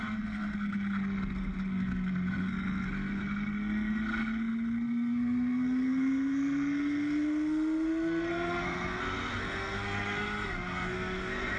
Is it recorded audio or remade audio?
remade